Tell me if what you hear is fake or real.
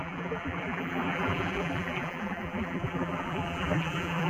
fake